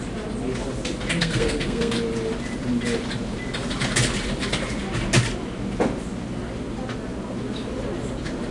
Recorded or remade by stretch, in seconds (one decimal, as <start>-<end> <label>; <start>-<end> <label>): 0.0-1.2 recorded; 1.2-1.9 remade; 1.9-8.5 recorded